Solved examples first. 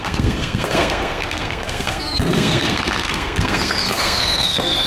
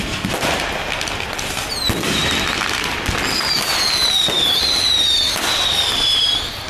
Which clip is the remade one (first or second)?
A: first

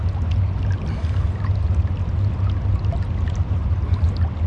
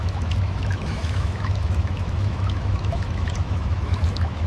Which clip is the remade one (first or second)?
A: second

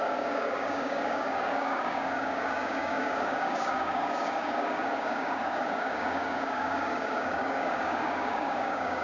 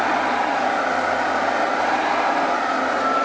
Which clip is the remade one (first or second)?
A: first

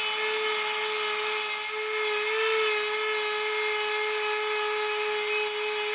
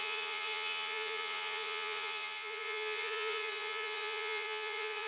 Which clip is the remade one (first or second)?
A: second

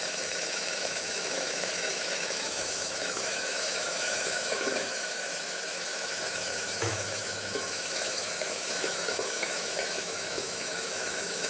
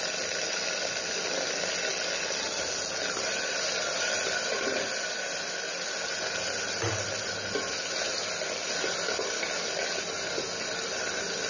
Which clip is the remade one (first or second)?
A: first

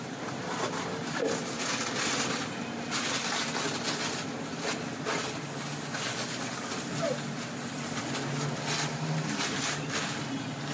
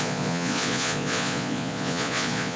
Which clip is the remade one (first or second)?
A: second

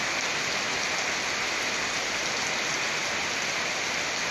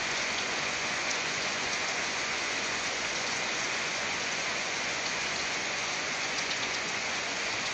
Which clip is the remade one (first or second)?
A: second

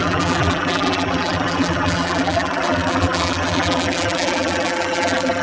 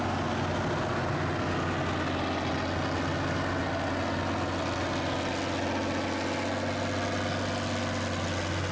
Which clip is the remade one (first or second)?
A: first